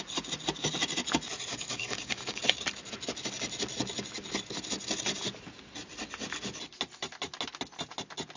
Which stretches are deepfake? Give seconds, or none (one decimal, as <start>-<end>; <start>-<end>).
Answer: 1.5-2.4